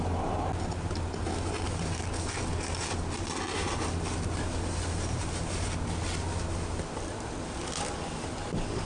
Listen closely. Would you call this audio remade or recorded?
recorded